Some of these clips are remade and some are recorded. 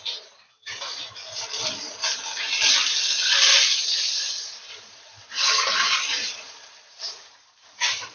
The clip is remade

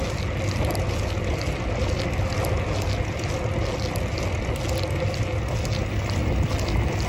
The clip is recorded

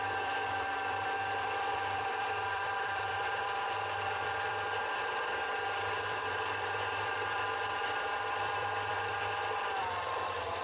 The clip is remade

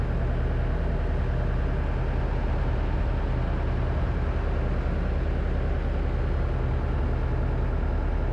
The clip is recorded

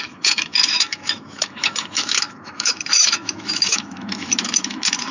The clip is remade